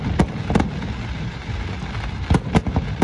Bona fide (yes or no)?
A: no